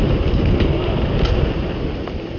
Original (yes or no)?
yes